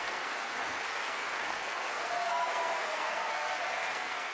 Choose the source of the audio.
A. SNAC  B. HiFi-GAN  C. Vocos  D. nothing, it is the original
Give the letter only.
A